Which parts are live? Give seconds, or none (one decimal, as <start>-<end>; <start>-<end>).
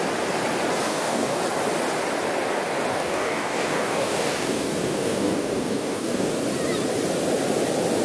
0.0-0.9; 1.4-2.9; 6.3-8.0